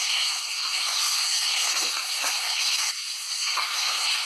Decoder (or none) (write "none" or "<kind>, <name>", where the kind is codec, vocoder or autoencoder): codec, SNAC